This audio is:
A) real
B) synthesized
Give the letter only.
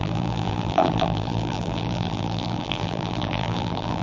B